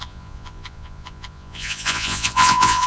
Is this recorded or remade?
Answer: remade